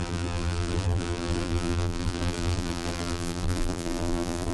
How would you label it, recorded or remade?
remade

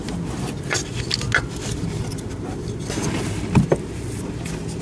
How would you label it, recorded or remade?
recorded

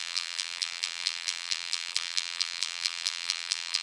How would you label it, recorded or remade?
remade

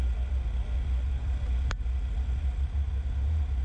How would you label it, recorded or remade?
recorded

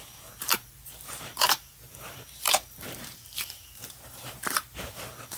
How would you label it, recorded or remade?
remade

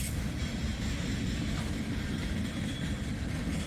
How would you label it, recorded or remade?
remade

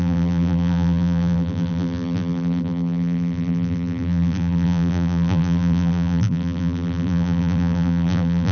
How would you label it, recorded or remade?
remade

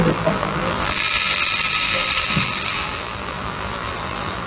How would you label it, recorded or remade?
remade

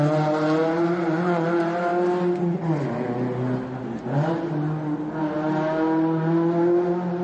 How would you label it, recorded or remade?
recorded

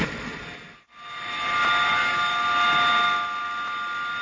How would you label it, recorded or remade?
recorded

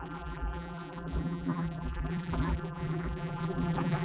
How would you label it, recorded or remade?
remade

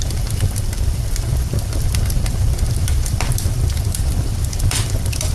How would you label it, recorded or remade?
remade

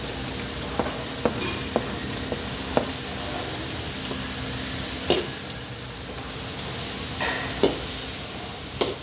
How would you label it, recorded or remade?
recorded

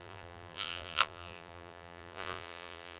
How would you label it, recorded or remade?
remade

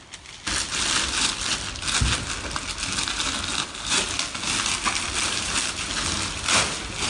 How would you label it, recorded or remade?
recorded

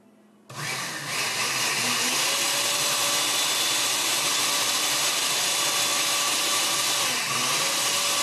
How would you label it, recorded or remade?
recorded